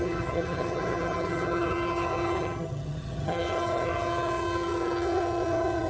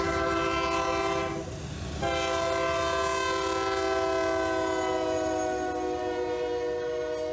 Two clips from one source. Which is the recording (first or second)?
second